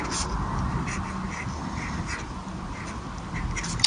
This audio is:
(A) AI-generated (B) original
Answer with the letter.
B